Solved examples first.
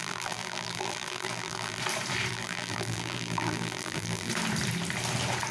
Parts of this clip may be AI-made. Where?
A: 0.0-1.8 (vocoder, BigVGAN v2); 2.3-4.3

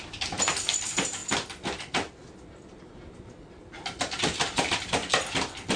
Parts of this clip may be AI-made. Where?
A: 0.0-1.2 (vocoder, BigVGAN v2); 1.8-2.2; 4.0-5.0

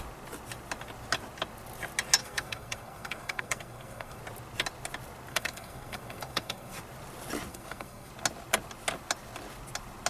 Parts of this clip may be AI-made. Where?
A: 2.2-4.2 (codec, SNAC); 5.3-6.8; 7.5-8.1

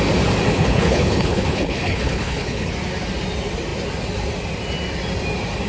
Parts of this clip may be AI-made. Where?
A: 0.5-2.7 (codec, HILCodec)